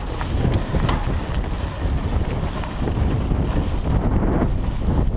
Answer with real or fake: real